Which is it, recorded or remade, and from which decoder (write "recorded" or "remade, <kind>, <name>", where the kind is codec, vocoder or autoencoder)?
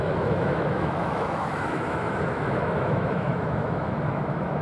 remade, autoencoder, DAC-VAE